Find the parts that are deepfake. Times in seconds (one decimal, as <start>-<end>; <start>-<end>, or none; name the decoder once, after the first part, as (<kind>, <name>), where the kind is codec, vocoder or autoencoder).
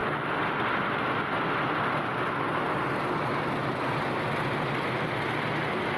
none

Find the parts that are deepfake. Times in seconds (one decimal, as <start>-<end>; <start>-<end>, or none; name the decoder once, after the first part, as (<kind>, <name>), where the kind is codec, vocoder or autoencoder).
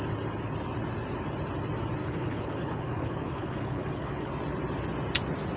2.0-4.3 (codec, HILCodec)